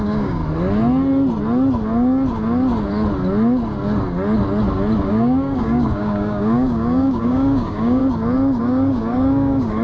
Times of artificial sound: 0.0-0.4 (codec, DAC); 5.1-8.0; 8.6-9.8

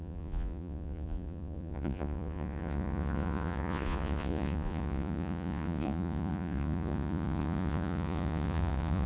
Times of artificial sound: 0.0-9.1 (vocoder, Vocos)

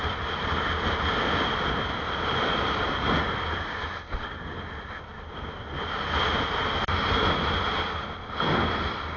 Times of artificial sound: none

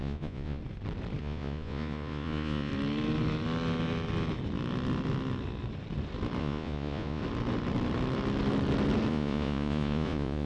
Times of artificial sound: 0.0-0.6 (vocoder, Vocos); 1.2-2.7; 6.4-7.2; 9.1-10.5